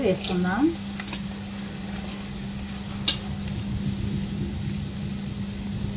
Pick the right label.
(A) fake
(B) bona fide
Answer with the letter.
B